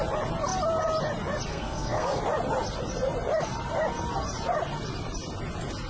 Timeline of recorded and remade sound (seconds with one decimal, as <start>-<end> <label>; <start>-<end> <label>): 0.0-1.5 recorded; 1.5-2.2 remade; 2.2-5.9 recorded

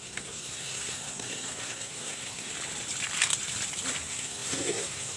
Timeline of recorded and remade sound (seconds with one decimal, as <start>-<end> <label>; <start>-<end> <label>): 0.0-2.5 remade; 2.5-4.0 recorded; 4.0-5.2 remade

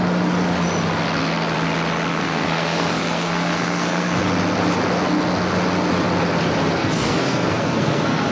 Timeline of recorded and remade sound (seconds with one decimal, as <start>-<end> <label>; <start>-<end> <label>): 0.0-2.1 recorded; 2.1-4.2 remade; 4.2-6.8 recorded; 6.8-8.3 remade

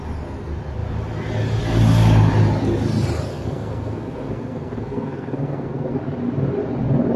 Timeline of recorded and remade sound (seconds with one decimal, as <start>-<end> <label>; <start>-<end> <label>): 0.0-3.3 recorded; 3.3-6.0 remade; 6.0-7.2 recorded